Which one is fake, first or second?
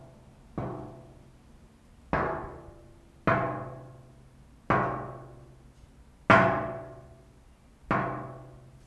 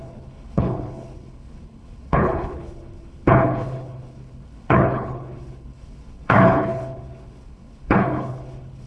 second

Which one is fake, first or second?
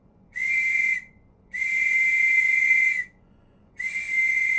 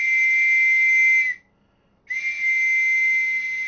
first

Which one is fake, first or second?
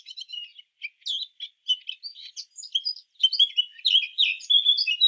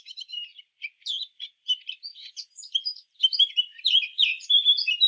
second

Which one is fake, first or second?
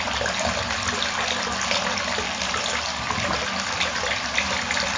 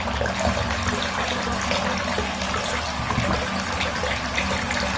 first